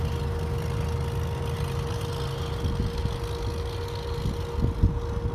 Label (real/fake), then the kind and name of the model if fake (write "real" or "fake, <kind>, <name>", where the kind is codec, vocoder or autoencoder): real